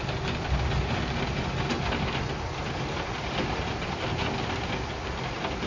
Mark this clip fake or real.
real